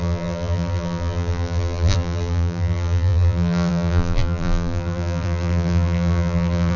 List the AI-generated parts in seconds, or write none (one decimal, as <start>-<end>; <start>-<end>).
0.0-6.8